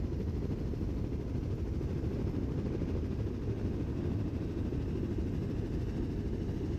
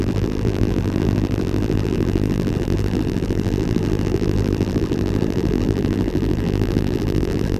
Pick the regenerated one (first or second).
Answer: second